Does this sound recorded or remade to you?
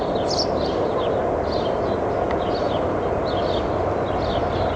recorded